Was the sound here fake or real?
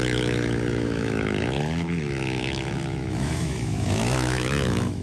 fake